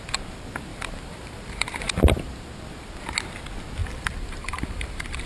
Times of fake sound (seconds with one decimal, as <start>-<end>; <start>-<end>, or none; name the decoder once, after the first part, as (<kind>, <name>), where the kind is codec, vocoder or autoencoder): 0.7-2.3 (vocoder, BigVGAN v2); 3.8-5.3